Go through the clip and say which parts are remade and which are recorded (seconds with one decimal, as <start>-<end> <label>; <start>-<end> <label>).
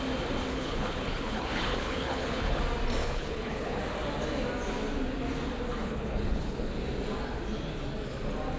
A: 0.0-0.5 recorded; 0.5-2.6 remade; 2.6-3.0 recorded; 3.0-3.8 remade; 3.8-5.8 recorded; 5.8-6.7 remade; 6.7-8.6 recorded